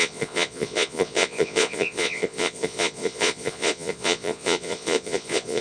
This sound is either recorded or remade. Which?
remade